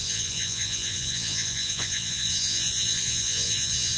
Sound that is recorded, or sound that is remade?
remade